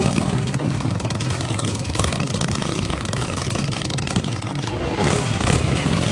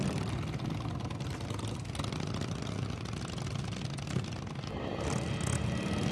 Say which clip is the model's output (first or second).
first